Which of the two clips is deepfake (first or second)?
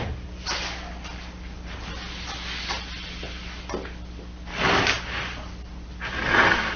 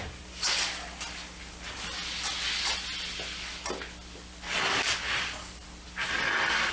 first